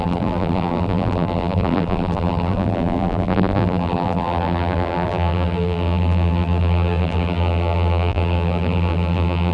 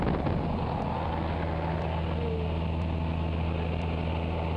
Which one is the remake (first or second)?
first